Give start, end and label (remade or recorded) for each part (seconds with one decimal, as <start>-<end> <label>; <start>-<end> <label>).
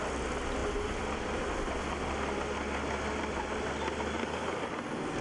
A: 0.0-4.2 recorded; 4.2-4.7 remade; 4.7-5.2 recorded